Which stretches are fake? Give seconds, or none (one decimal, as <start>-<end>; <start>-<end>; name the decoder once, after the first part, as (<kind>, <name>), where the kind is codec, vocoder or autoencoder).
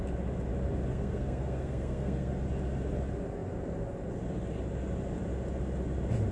0.9-2.3 (codec, SNAC)